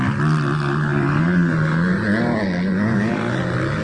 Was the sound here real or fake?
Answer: real